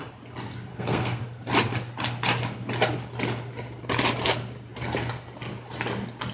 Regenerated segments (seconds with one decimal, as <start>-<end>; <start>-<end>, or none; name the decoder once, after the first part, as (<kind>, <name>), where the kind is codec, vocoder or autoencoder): 0.7-1.2 (codec, SNAC)